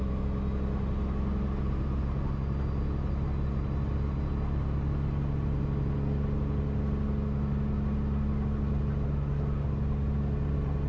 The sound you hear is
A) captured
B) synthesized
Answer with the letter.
A